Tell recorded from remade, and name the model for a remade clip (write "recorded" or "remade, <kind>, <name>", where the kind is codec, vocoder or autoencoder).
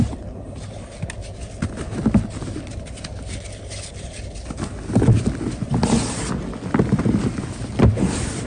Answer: recorded